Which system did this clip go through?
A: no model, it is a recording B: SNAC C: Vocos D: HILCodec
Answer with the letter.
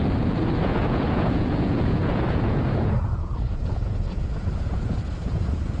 C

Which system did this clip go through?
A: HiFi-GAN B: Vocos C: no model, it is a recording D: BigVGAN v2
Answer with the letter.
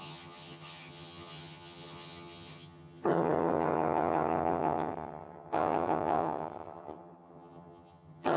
A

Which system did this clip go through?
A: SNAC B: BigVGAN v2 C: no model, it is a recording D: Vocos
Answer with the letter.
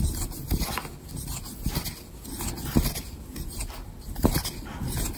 C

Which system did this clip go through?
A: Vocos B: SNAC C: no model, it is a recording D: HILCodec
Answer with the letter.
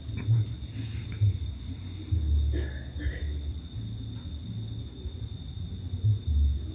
C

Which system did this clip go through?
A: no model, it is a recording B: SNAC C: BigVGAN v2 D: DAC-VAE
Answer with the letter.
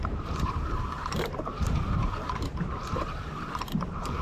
C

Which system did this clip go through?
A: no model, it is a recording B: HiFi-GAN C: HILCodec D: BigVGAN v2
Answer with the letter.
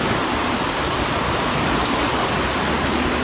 A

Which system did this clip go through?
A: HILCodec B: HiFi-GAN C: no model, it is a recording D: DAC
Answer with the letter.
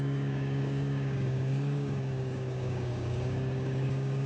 D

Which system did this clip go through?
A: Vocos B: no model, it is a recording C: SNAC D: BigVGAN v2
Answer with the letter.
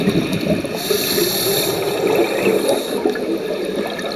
B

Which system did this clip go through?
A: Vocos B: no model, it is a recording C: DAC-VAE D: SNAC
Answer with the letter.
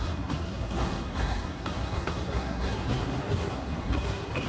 D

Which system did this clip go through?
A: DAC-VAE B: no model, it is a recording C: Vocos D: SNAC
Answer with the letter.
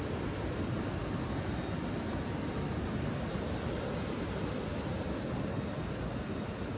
B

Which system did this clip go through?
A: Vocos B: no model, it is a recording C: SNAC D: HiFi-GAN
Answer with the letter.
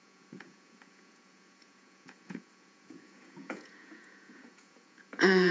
A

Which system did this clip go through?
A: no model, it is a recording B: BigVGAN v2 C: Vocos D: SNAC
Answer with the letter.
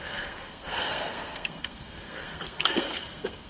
D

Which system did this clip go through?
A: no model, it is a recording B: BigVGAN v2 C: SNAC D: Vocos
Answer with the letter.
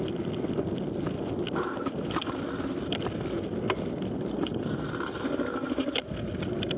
A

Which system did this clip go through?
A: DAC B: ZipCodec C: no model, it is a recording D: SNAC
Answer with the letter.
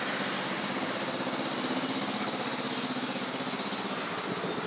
C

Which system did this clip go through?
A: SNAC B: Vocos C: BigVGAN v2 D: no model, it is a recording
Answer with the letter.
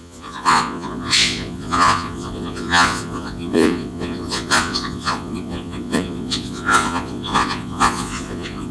B